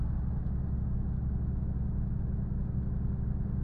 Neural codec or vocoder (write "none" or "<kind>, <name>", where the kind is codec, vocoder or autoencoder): none